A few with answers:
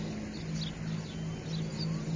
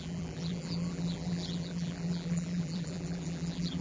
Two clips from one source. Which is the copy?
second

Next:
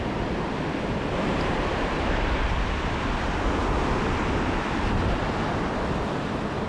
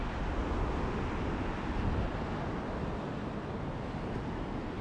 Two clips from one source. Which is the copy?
first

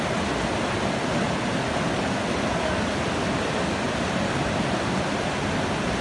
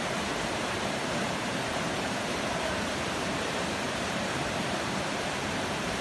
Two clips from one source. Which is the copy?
second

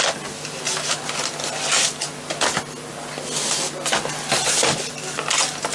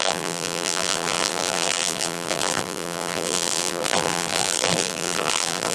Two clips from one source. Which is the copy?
second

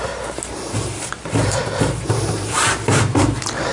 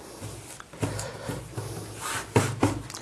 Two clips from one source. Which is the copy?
first